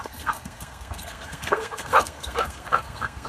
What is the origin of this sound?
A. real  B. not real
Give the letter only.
B